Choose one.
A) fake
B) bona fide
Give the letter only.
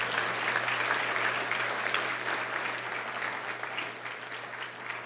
B